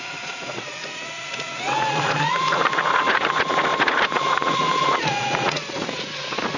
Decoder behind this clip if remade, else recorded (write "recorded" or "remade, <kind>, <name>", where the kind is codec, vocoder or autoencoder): remade, vocoder, Vocos